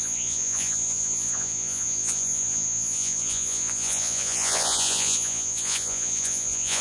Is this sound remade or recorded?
remade